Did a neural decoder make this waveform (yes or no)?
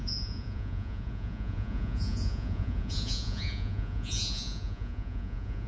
yes